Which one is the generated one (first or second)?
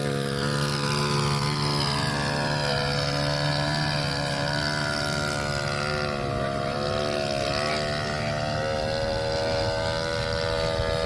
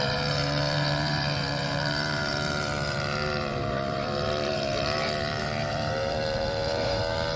second